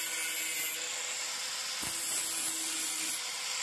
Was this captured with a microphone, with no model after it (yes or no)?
yes